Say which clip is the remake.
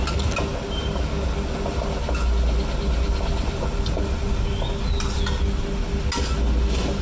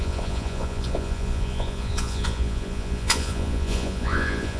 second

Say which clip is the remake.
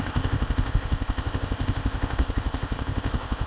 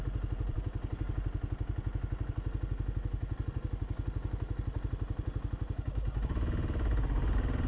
first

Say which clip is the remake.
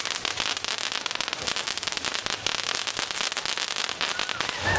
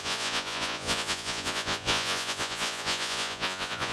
second